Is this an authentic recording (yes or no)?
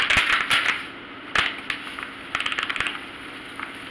yes